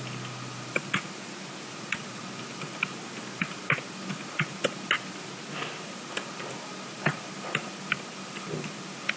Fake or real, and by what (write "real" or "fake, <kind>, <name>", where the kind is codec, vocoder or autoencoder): real